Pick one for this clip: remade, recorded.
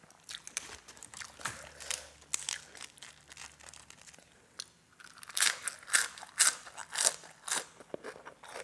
recorded